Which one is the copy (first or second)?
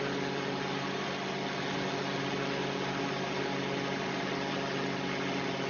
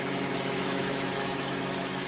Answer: second